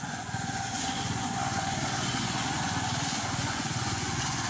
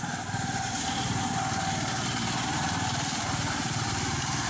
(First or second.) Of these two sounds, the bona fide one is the second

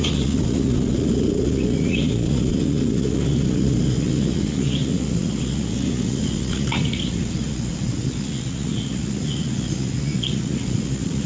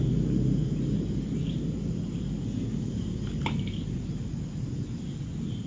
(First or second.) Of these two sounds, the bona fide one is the second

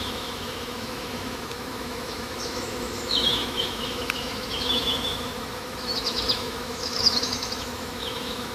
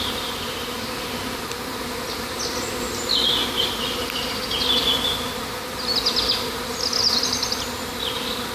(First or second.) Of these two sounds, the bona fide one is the second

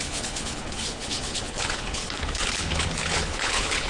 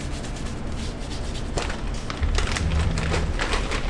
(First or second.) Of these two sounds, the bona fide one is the second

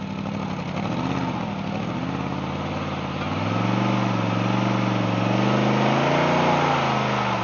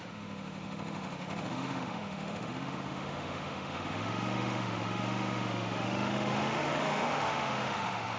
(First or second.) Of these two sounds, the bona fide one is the first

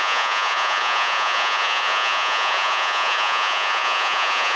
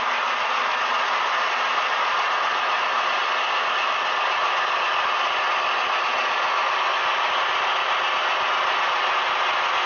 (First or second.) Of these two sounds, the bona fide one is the second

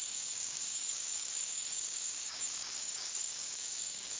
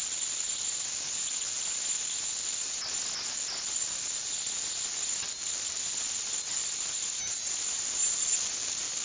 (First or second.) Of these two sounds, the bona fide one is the second